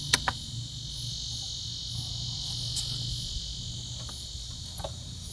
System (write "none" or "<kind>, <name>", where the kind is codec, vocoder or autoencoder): none